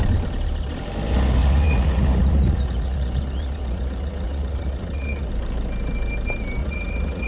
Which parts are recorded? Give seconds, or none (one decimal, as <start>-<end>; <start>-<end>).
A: 0.0-1.4; 5.3-6.6